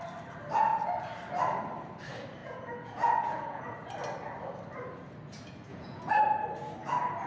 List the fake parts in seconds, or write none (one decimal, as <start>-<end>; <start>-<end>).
2.4-3.6; 5.7-6.2